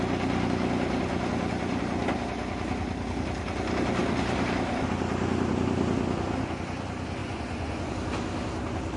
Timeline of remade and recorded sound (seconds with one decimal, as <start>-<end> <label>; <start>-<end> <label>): 0.0-7.2 recorded; 7.2-7.9 remade; 7.9-9.0 recorded